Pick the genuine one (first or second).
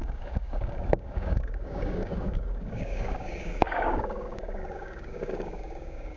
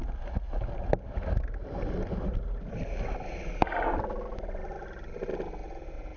second